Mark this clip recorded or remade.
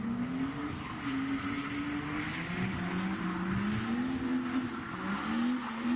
recorded